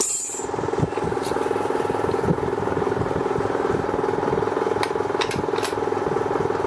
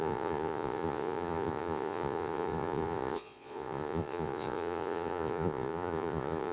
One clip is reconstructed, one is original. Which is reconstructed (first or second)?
second